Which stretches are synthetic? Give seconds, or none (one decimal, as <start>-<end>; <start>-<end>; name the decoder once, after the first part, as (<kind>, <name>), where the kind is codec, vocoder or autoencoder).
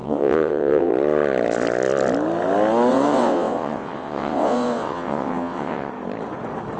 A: 0.0-0.9 (vocoder, WaveNeXt); 2.9-5.9